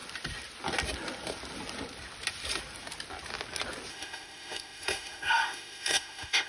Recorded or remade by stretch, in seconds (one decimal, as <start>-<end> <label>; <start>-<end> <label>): 0.0-3.9 recorded; 3.9-6.5 remade